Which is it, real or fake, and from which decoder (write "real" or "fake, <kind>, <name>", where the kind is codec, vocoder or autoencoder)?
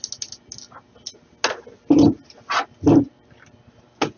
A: real